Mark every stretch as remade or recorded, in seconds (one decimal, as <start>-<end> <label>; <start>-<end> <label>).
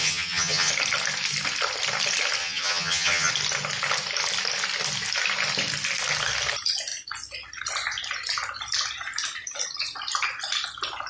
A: 0.0-0.7 remade; 0.7-2.4 recorded; 2.4-3.3 remade; 3.3-11.1 recorded